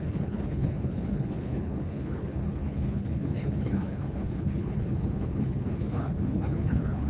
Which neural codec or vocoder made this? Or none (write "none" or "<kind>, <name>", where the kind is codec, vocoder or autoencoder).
codec, HILCodec